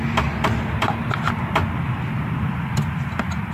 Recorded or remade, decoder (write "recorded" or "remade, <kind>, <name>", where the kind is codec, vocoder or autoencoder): remade, vocoder, BigVGAN v2